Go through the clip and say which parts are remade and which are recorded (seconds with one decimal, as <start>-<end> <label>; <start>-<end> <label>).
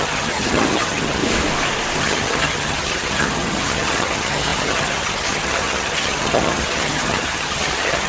0.0-1.2 remade; 1.2-2.0 recorded; 2.0-8.1 remade